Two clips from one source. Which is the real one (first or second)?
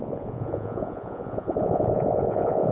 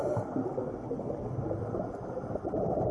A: second